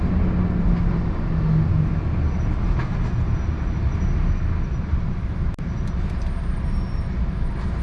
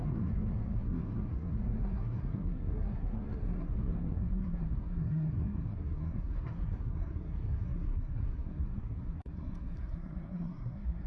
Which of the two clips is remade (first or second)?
second